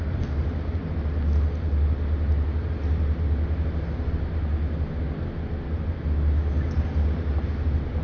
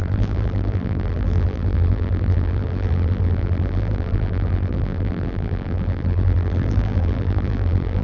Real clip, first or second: first